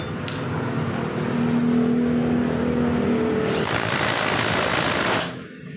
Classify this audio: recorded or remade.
recorded